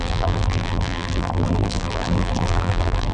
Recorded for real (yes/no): no